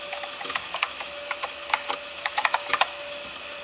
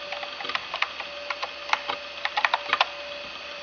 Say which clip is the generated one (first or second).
first